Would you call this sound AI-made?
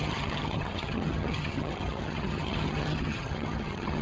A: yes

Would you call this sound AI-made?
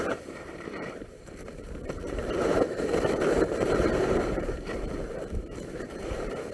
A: yes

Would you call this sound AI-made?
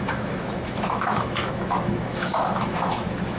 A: yes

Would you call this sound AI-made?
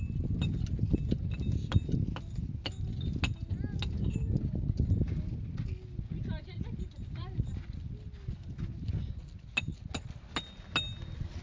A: no